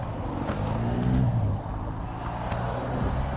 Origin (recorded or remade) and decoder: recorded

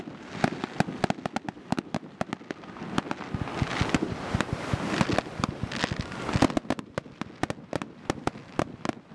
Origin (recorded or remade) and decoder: recorded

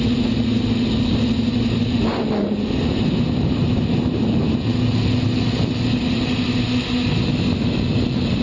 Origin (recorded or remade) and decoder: recorded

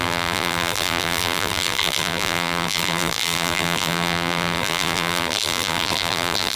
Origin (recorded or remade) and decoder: remade, vocoder, BigVGAN v2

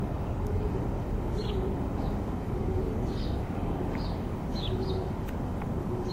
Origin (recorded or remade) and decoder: remade, codec, DAC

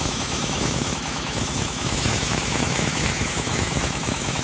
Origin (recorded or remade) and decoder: remade, autoencoder, DAC-VAE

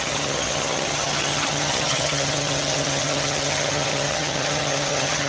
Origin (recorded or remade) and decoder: remade, vocoder, HiFi-GAN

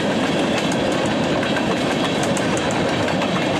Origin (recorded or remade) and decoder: remade, vocoder, BigVGAN v2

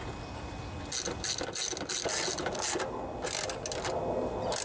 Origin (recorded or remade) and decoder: recorded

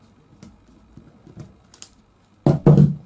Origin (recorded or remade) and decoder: recorded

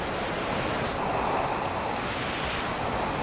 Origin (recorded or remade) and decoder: recorded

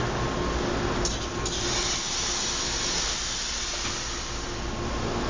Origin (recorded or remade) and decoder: recorded